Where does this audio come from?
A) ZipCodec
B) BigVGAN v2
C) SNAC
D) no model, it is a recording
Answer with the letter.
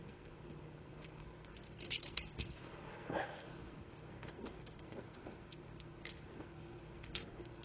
C